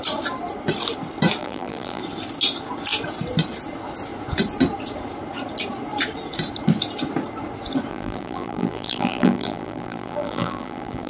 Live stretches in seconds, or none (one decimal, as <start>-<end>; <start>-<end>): 0.0-1.4; 2.0-7.9